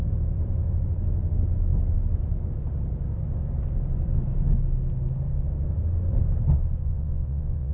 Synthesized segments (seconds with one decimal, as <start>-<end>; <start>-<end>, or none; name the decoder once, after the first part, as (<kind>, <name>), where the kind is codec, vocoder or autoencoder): 6.8-7.7 (vocoder, Vocos)